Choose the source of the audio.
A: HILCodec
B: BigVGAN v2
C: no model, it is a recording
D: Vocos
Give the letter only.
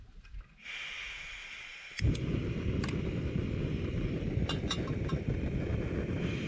C